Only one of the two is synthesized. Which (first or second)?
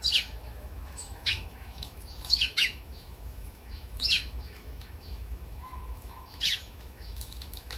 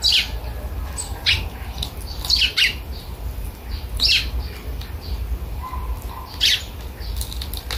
first